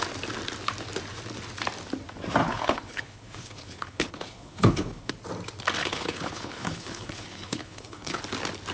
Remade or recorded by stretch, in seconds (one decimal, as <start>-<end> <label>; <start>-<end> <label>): 0.0-2.4 recorded; 2.4-5.1 remade; 5.1-5.8 recorded; 5.8-8.2 remade; 8.2-8.7 recorded